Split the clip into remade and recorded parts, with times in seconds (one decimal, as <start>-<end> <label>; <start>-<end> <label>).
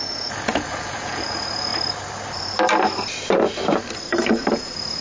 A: 0.0-1.7 remade; 1.7-4.5 recorded; 4.5-5.0 remade